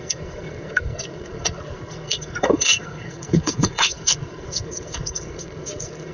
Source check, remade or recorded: remade